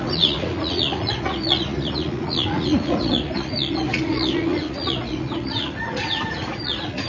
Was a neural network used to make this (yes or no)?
yes